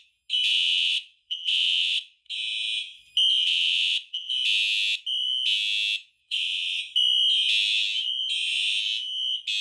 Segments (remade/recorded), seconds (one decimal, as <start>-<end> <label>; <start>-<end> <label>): 0.0-0.5 recorded; 0.5-2.3 remade; 2.3-3.4 recorded; 3.4-4.3 remade; 4.3-6.2 recorded; 6.2-6.8 remade; 6.8-9.6 recorded